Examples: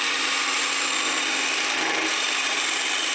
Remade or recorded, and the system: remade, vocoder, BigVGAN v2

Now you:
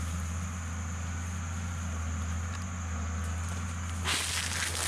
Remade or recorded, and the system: recorded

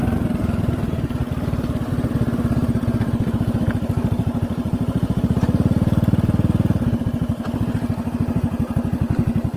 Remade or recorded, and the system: recorded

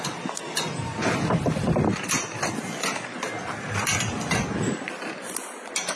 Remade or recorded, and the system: recorded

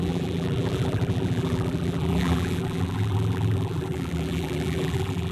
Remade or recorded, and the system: remade, vocoder, BigVGAN v2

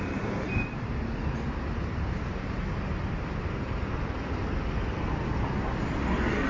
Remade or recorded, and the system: recorded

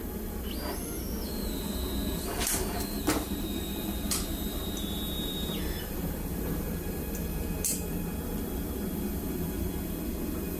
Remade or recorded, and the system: remade, vocoder, BigVGAN v2